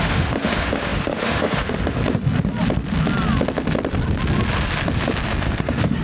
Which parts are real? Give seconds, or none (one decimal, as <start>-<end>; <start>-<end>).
2.0-5.6

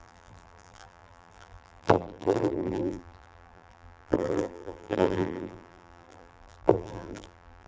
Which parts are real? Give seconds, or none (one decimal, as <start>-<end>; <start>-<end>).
none